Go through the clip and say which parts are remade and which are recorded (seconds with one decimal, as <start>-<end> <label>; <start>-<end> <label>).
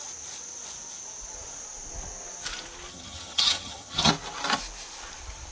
0.0-2.9 recorded; 2.9-4.1 remade; 4.1-5.5 recorded